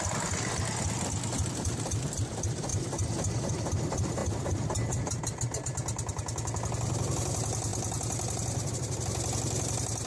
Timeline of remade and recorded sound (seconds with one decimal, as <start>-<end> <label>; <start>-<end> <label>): 0.0-10.1 recorded